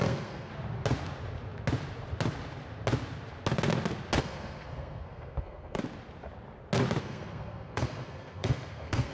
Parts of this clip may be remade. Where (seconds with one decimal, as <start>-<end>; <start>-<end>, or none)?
0.0-0.5; 4.2-5.8; 7.0-9.1